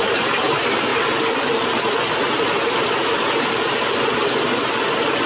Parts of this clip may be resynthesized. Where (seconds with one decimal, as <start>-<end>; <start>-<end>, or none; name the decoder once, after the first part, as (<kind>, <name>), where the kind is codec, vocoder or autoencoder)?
none